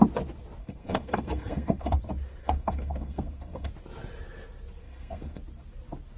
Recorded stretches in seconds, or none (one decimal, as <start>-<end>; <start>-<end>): 0.0-0.6; 2.0-2.4; 3.7-4.8; 5.4-6.2